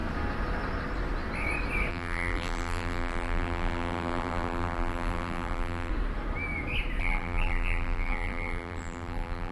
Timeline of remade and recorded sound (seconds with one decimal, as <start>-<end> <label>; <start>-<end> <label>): 0.0-1.9 recorded; 1.9-5.9 remade; 5.9-7.0 recorded; 7.0-9.5 remade